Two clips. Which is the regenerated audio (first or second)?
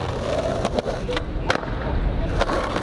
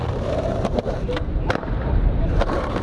second